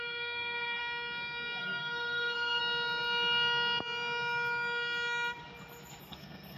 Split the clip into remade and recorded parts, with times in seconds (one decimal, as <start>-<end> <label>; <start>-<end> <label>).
0.0-0.8 remade; 0.8-1.6 recorded; 1.6-2.6 remade; 2.6-6.0 recorded; 6.0-6.6 remade